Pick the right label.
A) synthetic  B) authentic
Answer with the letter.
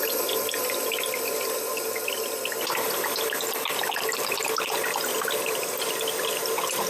B